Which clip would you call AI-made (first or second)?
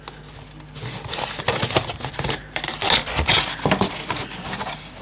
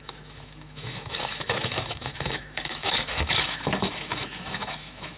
second